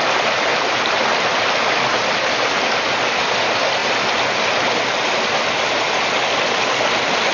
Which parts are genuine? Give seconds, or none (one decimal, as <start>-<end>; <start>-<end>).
0.0-7.3